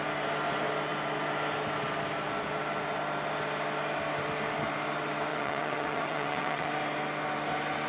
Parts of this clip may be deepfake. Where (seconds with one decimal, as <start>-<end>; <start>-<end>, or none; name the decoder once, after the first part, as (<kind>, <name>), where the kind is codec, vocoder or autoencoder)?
5.3-6.7 (vocoder, WaveNeXt)